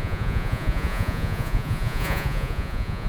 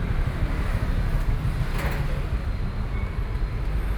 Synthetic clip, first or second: first